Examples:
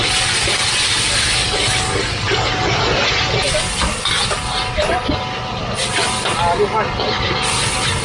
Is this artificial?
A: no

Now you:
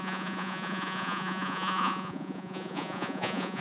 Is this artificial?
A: yes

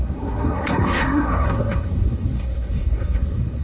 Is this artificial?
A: yes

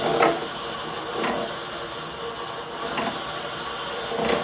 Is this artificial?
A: no